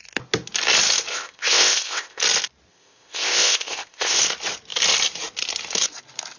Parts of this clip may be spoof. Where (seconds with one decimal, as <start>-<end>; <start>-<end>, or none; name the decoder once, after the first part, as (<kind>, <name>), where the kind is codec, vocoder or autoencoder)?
1.1-2.2 (codec, ZipCodec); 2.7-4.2

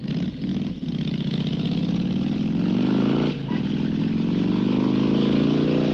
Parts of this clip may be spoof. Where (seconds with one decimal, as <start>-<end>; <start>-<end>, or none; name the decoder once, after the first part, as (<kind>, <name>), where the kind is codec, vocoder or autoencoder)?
none

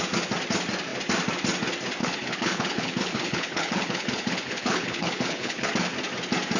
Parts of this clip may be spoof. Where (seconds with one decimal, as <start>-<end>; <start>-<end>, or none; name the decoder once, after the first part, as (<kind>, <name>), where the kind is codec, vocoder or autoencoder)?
2.0-5.7 (codec, HILCodec)